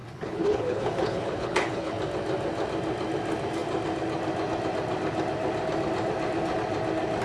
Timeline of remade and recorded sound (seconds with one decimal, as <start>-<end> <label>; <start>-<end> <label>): 0.0-2.0 remade; 2.0-7.2 recorded